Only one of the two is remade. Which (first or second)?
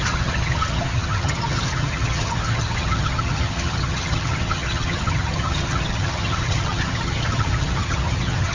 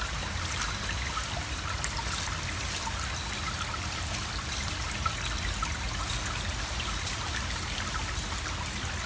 first